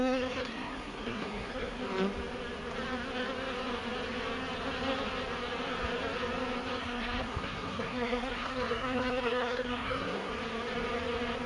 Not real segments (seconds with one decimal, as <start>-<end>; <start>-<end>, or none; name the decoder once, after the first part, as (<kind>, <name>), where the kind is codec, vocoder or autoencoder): 0.0-1.8 (codec, SNAC); 6.8-10.3